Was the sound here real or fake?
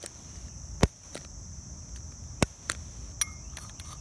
real